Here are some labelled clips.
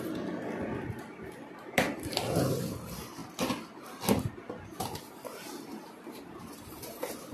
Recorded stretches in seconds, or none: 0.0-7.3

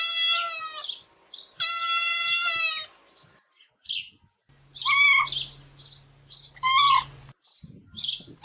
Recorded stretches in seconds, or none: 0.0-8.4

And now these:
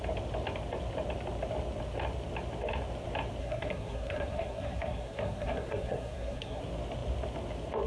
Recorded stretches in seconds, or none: 0.0-3.4; 6.6-7.9

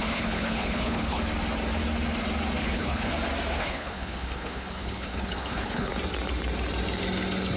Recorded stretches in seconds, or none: 1.2-2.6; 3.1-3.6; 5.9-7.6

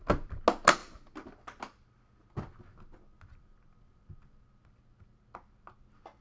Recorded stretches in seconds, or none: 0.0-6.2

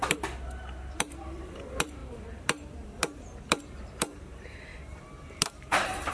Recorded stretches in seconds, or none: none

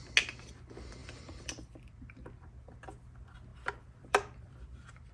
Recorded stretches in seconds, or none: 0.0-1.0; 2.4-3.5